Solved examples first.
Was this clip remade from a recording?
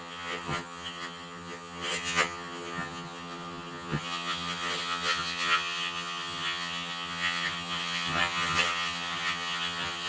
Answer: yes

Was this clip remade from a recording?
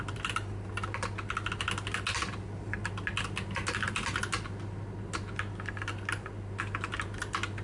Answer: no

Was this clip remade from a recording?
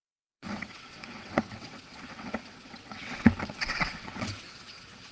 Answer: yes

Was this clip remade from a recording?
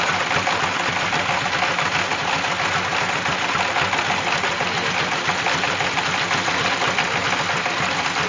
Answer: no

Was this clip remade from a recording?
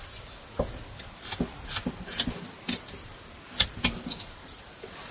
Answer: no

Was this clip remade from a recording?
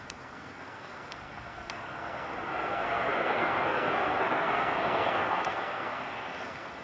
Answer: yes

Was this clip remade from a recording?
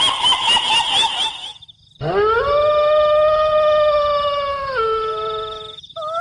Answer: no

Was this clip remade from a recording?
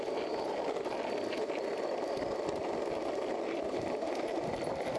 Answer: no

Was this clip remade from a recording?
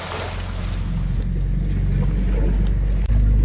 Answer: no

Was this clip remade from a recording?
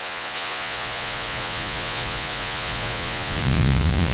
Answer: yes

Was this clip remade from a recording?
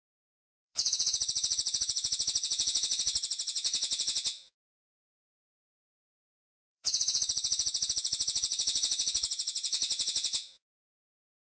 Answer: yes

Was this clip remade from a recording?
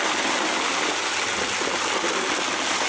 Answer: no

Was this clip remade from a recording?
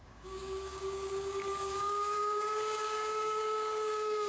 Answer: yes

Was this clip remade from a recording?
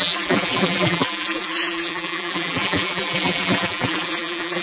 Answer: yes